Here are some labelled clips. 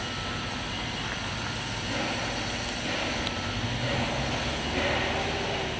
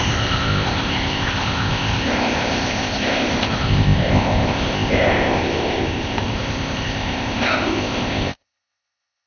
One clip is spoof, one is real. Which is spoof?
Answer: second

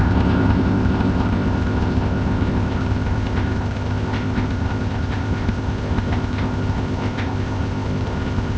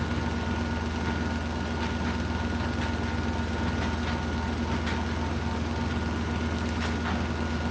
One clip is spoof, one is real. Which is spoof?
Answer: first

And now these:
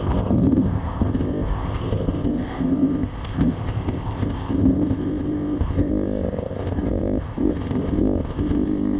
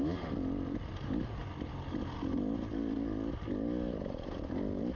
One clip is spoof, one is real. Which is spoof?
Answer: first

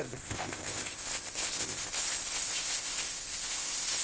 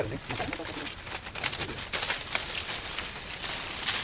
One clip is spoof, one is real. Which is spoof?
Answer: first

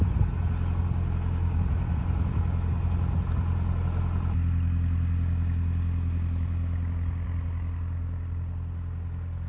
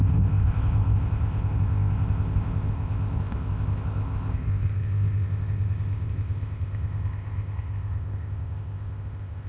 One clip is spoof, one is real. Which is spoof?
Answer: second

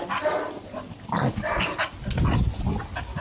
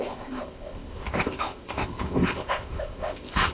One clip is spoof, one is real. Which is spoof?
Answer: second